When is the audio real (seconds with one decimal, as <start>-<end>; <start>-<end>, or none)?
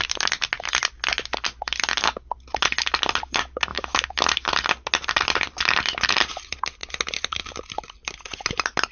0.0-8.9